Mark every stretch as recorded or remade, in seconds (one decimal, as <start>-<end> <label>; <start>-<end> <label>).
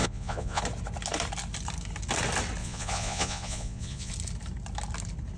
0.0-0.6 remade; 0.6-2.6 recorded; 2.6-4.1 remade; 4.1-5.4 recorded